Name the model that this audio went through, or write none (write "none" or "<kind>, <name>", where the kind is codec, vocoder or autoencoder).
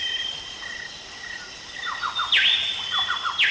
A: none